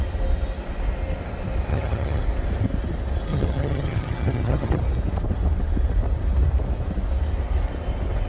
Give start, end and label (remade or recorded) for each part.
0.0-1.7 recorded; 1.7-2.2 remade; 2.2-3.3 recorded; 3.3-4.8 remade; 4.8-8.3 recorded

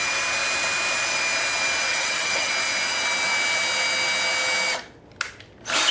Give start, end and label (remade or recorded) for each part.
0.0-1.9 recorded; 1.9-2.5 remade; 2.5-5.9 recorded

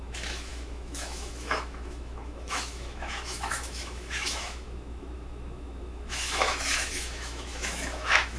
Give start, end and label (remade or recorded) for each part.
0.0-8.4 remade

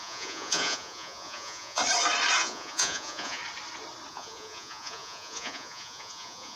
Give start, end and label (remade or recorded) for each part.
0.0-1.8 remade; 1.8-2.4 recorded; 2.4-3.4 remade; 3.4-4.1 recorded; 4.1-6.6 remade

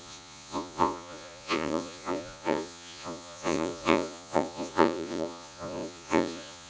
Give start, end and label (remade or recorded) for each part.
0.0-6.7 remade